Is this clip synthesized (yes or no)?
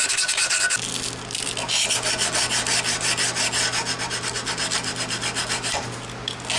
no